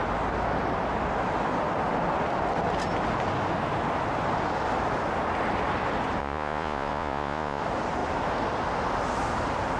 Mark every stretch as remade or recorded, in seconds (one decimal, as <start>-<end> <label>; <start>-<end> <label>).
0.0-6.2 recorded; 6.2-7.6 remade; 7.6-9.8 recorded